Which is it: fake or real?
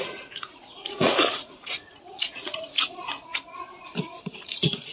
fake